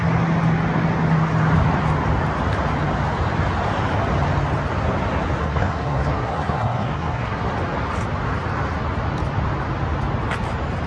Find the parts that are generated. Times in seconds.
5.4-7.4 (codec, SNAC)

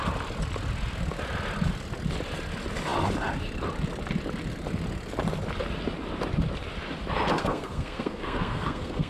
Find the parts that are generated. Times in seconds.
7.4-9.1 (codec, SNAC)

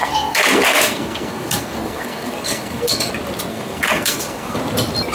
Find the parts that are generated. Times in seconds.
0.0-3.1 (codec, SNAC); 3.5-4.6

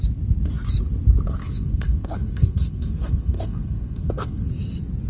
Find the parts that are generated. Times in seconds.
1.4-4.5 (codec, SNAC)

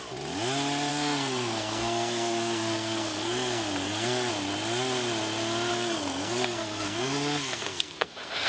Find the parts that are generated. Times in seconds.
0.9-4.3 (codec, SNAC); 5.7-8.5